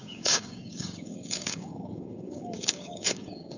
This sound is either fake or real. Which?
fake